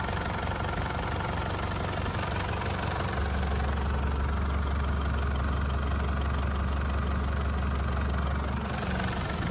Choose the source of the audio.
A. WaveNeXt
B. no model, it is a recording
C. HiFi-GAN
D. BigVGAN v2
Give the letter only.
B